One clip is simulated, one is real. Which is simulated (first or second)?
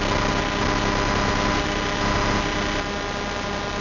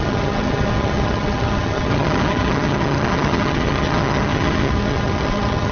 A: second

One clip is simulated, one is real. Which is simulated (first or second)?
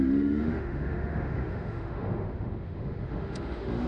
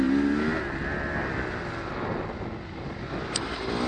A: first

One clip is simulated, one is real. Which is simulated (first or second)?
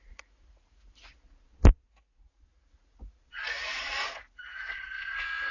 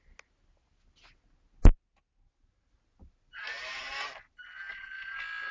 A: first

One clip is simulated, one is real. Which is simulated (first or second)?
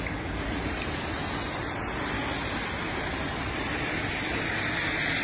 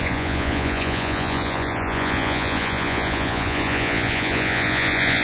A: second